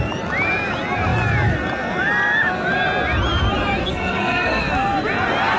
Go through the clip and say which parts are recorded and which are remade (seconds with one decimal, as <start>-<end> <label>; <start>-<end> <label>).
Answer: 0.0-3.8 recorded; 3.8-4.6 remade; 4.6-5.6 recorded